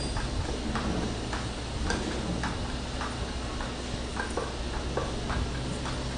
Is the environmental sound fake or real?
real